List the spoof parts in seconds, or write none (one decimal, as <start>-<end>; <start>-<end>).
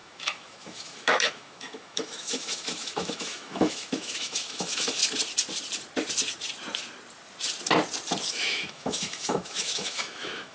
0.0-5.0; 8.3-10.5